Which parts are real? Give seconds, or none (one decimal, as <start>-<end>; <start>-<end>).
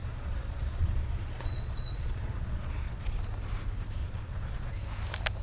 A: 3.2-4.0; 4.7-5.4